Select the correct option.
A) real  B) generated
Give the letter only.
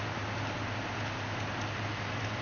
A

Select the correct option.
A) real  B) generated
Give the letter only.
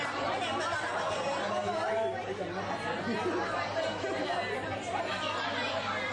A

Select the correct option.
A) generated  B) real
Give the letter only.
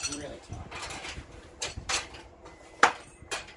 A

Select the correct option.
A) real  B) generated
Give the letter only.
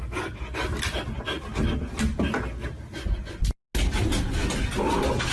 A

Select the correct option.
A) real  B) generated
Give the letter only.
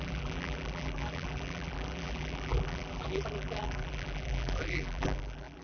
B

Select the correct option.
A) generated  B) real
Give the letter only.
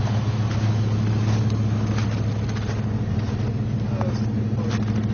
B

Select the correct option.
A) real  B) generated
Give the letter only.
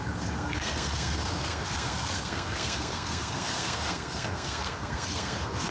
B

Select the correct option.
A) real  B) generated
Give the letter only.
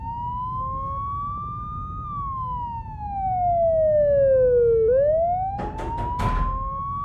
A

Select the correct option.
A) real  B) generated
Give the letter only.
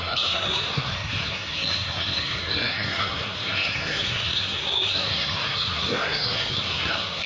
B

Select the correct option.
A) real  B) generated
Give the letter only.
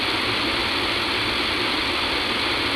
A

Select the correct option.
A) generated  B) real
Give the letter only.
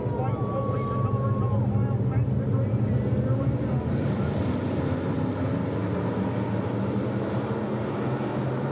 B